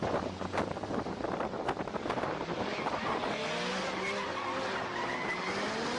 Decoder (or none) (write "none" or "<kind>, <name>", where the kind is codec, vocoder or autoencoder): none